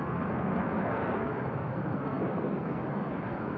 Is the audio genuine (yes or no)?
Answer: no